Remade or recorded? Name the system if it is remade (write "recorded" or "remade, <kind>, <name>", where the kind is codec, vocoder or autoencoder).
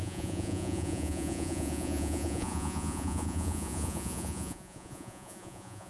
remade, vocoder, Vocos